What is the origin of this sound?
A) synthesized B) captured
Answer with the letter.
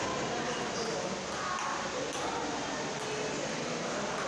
B